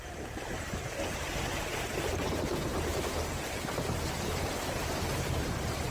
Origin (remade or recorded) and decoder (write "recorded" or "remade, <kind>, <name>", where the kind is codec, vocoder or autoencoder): remade, vocoder, BigVGAN v2